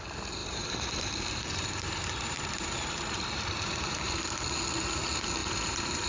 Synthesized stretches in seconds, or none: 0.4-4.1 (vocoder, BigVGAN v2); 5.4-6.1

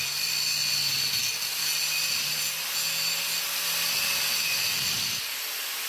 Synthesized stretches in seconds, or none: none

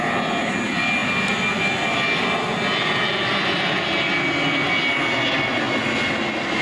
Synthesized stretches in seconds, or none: none